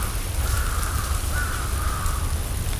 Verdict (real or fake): real